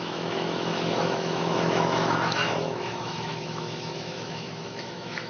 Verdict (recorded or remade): remade